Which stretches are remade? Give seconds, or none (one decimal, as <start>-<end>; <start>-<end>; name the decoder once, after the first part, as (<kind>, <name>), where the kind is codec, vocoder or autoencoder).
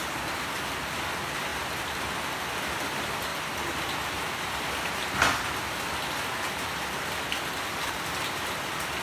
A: none